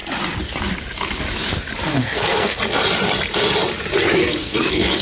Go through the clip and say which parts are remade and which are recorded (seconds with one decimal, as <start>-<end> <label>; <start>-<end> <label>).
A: 0.0-1.9 recorded; 1.9-2.6 remade; 2.6-4.2 recorded; 4.2-5.0 remade